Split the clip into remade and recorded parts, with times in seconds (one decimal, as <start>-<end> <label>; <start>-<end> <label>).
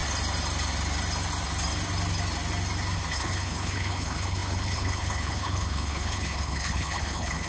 0.0-3.1 recorded; 3.1-7.5 remade